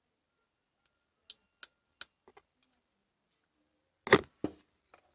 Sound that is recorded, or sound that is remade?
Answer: recorded